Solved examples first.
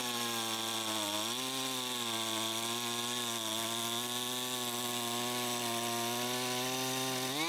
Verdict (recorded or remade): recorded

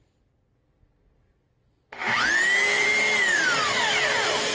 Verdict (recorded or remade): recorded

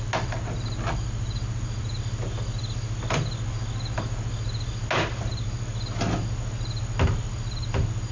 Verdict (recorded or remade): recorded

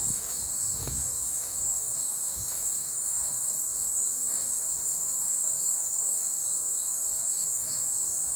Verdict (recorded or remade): remade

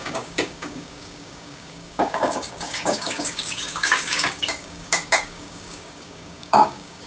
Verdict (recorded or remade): remade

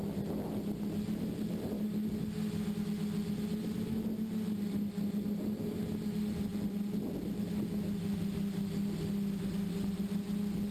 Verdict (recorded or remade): recorded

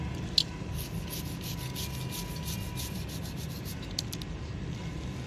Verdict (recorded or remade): recorded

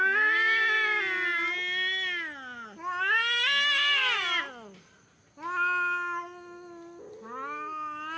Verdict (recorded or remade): recorded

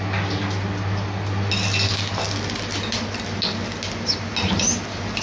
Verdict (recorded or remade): recorded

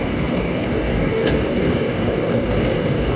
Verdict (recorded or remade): remade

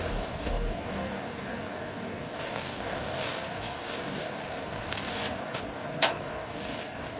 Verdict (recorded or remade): remade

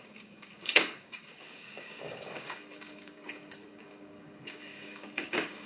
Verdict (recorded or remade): remade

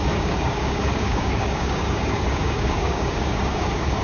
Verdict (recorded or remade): remade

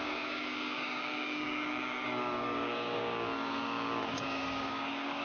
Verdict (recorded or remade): remade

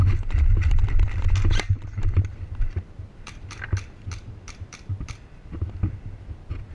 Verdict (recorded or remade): recorded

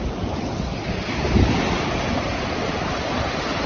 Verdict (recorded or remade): recorded